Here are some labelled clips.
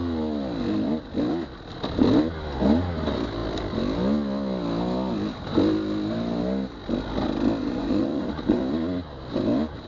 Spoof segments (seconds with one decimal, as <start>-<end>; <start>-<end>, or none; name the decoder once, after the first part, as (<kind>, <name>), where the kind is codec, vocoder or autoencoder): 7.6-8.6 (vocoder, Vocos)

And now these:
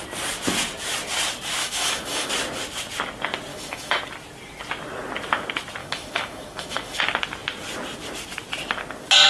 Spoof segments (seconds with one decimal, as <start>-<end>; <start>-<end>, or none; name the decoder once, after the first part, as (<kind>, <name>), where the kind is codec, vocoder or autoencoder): 1.6-2.3 (autoencoder, DAC-VAE); 3.5-4.0; 5.8-7.0

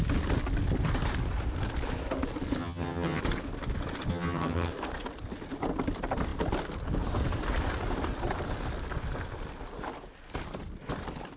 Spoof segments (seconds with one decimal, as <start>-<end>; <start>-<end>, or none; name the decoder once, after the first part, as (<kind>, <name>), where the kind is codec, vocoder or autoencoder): 2.6-3.2 (vocoder, HiFi-GAN); 4.1-4.7